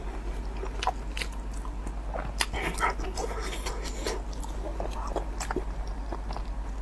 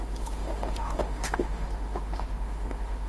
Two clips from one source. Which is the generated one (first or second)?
second